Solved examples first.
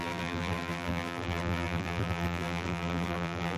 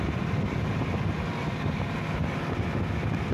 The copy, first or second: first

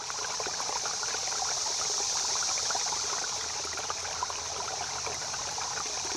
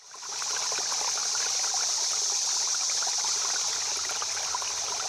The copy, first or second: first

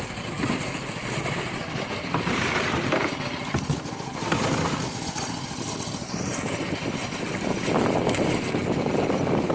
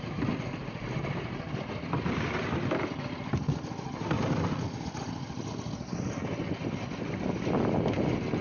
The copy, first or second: first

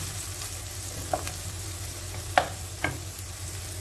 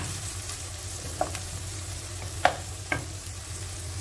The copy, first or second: second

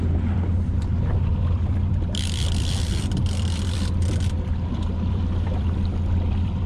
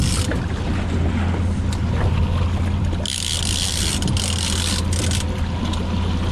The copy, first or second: first